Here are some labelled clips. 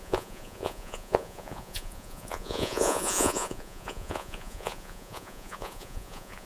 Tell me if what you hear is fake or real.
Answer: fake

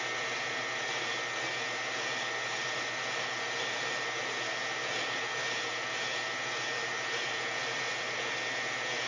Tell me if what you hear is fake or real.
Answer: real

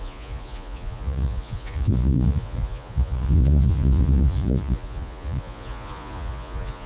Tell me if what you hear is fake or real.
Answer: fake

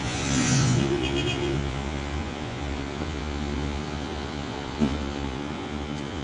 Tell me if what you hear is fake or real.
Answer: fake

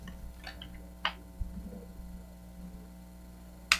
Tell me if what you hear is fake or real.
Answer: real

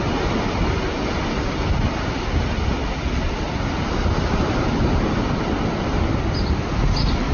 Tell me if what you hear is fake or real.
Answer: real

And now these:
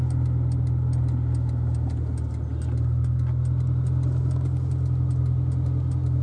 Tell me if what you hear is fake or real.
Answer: real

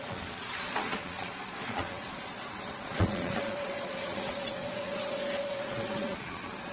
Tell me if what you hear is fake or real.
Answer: fake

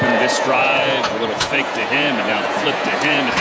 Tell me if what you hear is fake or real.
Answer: fake